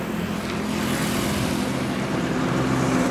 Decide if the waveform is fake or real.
real